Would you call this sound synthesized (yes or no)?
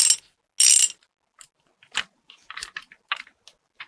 no